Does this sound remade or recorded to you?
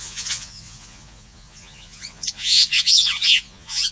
remade